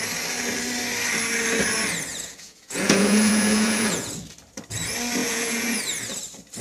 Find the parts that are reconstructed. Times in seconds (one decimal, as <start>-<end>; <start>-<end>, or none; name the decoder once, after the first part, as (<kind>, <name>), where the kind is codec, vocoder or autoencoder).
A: 2.1-4.2 (vocoder, Vocos); 5.2-5.8